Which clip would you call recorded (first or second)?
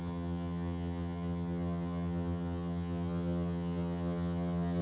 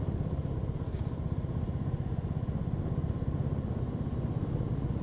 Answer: second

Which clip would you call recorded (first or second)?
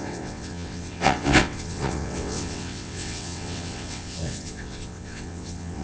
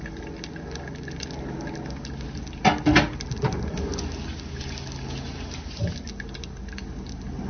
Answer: second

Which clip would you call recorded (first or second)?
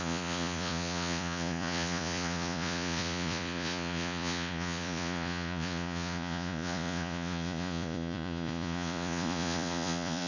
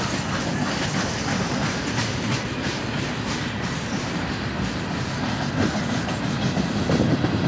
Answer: second